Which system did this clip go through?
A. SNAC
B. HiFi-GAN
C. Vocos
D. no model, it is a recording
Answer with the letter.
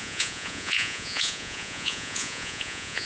C